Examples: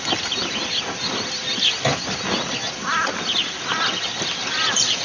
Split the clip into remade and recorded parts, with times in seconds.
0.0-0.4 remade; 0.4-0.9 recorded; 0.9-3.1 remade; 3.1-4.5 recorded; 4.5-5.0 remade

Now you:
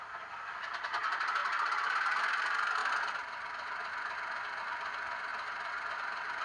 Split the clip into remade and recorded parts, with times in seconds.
0.0-6.4 recorded

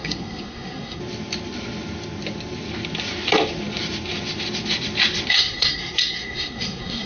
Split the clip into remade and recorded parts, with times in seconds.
0.0-1.0 remade; 1.0-5.3 recorded; 5.3-7.1 remade

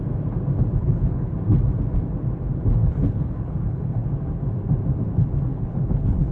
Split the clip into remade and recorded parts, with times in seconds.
0.0-0.8 recorded; 0.8-1.3 remade; 1.3-2.8 recorded; 2.8-4.1 remade; 4.1-5.5 recorded; 5.5-6.3 remade

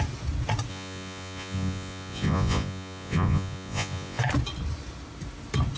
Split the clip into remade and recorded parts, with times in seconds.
0.0-0.7 recorded; 0.7-4.2 remade; 4.2-5.8 recorded

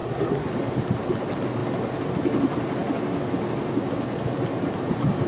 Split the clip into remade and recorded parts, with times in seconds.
0.0-0.5 remade; 0.5-5.3 recorded

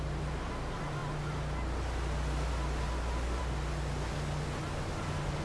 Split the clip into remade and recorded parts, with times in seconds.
0.0-5.4 recorded